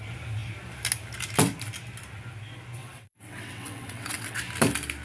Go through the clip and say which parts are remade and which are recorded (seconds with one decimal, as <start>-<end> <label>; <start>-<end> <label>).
0.0-2.8 recorded; 2.8-4.4 remade; 4.4-5.0 recorded